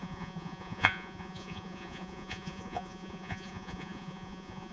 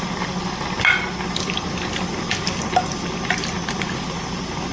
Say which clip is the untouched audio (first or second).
second